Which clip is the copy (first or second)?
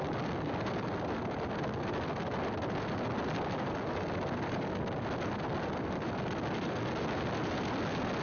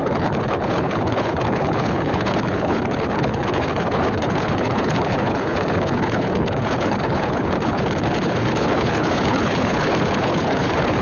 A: second